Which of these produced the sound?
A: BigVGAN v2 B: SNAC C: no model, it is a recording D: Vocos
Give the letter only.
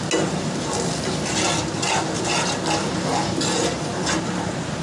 C